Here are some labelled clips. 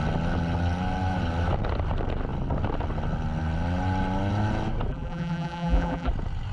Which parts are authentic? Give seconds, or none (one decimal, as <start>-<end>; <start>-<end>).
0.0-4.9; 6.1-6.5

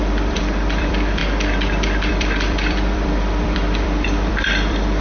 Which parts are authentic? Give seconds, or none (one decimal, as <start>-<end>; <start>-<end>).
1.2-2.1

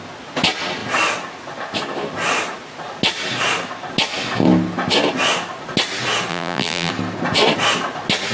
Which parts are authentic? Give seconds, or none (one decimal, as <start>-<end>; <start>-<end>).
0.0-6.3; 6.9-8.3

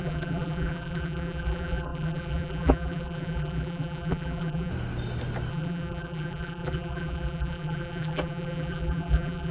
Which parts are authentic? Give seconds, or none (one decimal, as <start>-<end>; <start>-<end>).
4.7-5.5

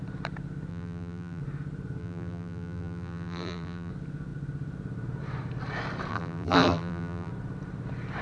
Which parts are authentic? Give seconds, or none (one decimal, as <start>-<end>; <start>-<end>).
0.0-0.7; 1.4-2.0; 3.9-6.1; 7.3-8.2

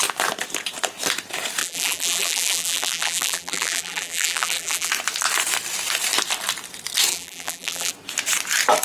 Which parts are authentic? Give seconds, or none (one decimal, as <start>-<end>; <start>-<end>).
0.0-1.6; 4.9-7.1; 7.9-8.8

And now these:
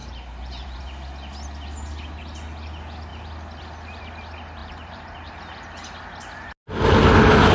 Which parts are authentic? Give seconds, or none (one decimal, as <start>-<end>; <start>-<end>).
0.8-4.6; 5.3-7.5